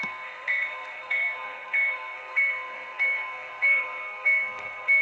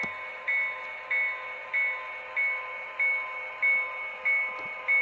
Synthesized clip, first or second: first